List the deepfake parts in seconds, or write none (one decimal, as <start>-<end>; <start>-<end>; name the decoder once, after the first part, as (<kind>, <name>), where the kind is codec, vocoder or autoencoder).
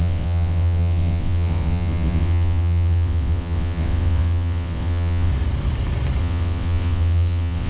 0.0-5.3 (vocoder, WaveNeXt); 6.2-7.7